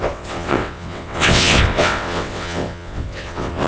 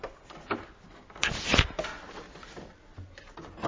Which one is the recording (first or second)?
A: second